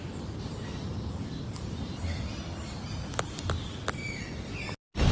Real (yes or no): yes